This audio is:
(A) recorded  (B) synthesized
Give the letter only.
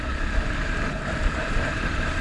B